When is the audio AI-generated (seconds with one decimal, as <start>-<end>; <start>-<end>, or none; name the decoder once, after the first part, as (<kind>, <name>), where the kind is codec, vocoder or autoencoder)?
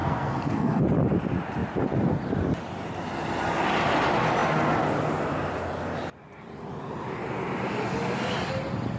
0.0-0.8 (codec, SNAC)